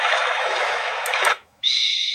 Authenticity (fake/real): fake